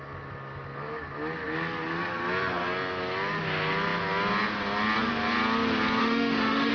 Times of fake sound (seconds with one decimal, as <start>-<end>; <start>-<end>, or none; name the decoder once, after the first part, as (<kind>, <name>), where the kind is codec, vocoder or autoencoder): 6.0-6.7 (autoencoder, DAC-VAE)